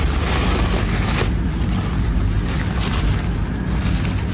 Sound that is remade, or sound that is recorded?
recorded